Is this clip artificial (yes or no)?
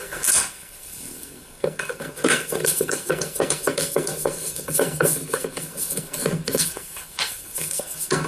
yes